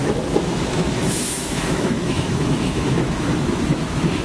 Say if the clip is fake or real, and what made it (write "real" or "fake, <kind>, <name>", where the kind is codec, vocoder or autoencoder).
fake, autoencoder, DAC-VAE